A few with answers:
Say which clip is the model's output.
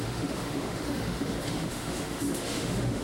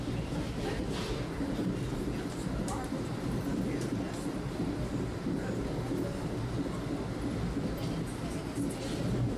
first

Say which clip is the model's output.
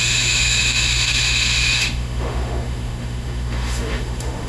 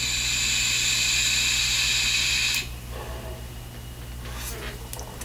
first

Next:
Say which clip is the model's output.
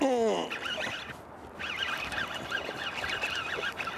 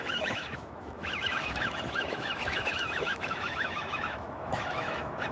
second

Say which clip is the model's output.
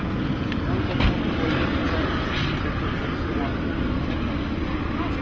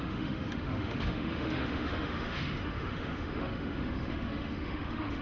second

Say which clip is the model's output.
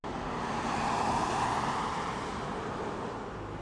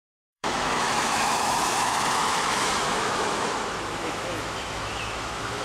second